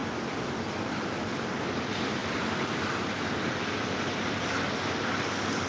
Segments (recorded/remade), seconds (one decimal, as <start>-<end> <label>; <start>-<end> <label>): 0.0-2.2 recorded; 2.2-5.7 remade